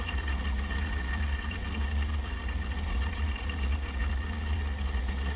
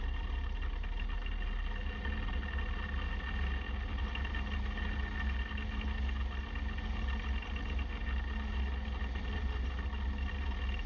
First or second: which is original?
second